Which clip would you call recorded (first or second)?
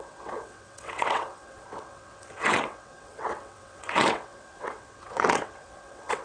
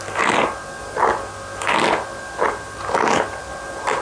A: second